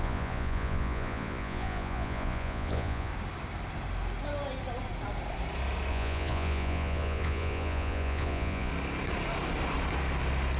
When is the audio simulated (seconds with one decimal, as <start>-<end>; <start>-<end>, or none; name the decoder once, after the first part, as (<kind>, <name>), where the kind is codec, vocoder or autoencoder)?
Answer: 0.0-3.1 (vocoder, Vocos); 5.9-8.7